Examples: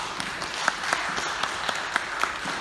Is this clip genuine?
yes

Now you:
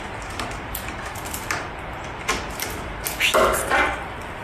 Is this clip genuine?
yes